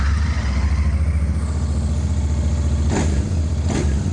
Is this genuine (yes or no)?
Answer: yes